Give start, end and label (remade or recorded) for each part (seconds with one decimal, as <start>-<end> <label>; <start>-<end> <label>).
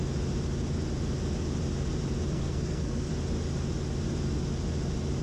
0.0-2.3 recorded; 2.3-3.1 remade; 3.1-5.2 recorded